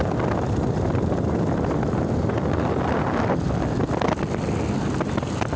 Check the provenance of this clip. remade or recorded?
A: recorded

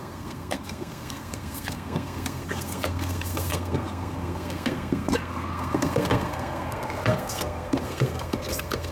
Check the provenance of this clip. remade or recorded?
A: remade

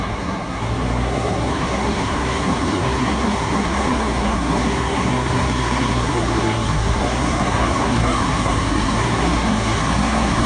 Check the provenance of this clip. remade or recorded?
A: remade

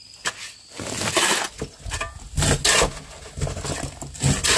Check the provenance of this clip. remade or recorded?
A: recorded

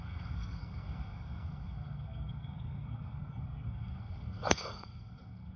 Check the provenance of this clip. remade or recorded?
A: remade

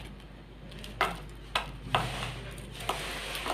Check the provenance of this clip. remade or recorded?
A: recorded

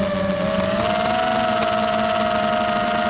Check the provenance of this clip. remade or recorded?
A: recorded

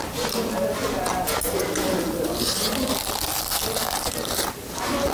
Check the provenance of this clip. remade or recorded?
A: recorded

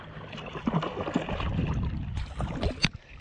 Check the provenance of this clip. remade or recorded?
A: recorded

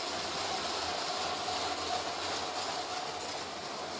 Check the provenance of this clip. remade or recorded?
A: recorded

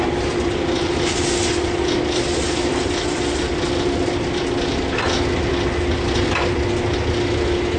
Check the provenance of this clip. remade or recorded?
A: recorded